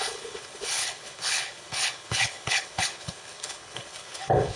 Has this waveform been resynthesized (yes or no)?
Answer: yes